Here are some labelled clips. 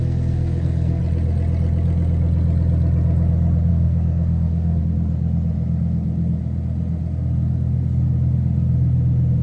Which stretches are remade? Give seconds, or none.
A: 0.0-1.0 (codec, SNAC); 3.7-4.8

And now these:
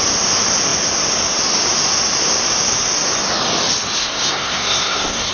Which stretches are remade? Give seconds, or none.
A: 4.0-5.3 (codec, SNAC)

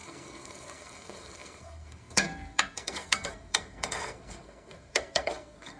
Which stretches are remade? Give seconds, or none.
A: 0.0-5.8 (codec, SNAC)

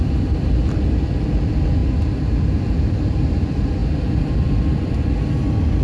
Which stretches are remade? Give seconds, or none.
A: none